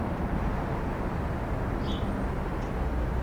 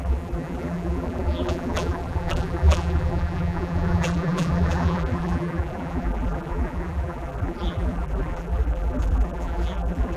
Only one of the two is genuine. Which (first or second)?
first